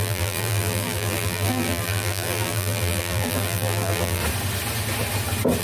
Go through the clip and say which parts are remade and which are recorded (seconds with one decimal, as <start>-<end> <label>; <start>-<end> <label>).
0.0-4.2 remade; 4.2-5.6 recorded